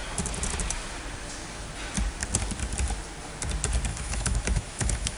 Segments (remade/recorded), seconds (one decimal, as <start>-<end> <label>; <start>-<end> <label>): 0.0-3.9 recorded; 3.9-5.2 remade